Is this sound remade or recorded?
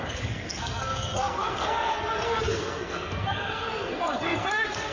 remade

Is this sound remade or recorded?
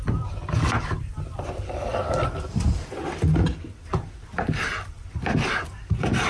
remade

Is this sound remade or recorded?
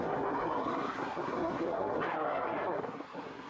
remade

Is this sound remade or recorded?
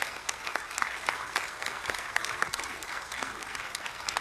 remade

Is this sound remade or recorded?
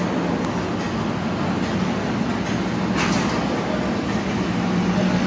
recorded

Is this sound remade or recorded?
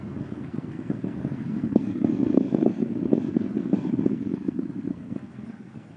remade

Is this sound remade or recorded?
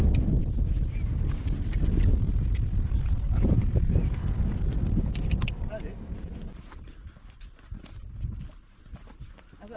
recorded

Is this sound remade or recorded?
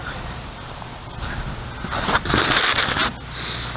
recorded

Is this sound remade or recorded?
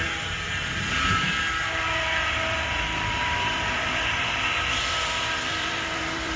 remade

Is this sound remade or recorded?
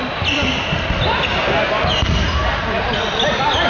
recorded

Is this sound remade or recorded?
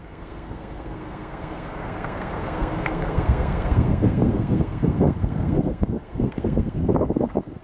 remade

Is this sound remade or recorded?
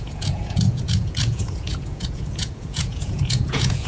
remade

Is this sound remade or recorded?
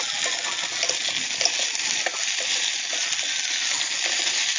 recorded